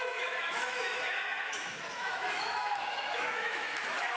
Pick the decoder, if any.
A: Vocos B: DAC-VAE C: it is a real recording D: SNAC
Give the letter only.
B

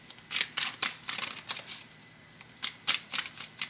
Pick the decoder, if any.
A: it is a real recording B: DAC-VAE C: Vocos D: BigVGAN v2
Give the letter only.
A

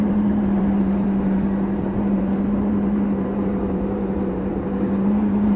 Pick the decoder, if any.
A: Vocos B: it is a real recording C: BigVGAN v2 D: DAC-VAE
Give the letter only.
C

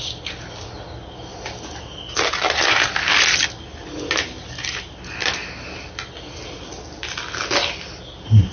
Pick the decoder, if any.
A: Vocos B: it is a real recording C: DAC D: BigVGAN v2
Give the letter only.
B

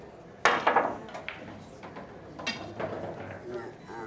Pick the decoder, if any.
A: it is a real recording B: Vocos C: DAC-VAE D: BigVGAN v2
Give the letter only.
A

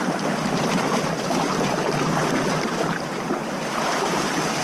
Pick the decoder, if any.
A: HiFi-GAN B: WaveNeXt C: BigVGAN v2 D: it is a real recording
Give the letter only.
C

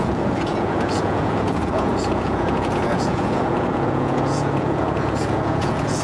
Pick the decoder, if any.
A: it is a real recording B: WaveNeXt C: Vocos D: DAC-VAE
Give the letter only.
C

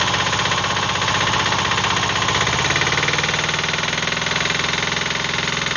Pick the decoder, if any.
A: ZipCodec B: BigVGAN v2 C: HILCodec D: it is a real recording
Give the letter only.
D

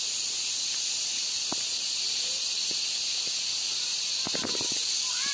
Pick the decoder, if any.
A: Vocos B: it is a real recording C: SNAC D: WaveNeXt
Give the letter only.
B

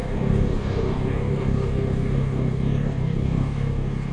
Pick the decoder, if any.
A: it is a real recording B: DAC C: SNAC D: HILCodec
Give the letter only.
B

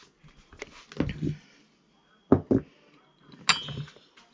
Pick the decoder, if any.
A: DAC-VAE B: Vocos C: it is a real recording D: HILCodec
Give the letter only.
C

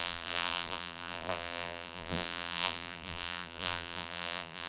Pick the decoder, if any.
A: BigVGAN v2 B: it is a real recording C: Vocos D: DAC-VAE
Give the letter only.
A